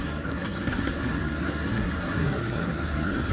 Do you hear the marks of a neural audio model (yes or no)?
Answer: yes